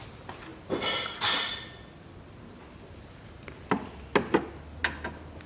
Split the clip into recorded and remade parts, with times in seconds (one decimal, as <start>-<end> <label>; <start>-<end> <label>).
0.0-5.5 recorded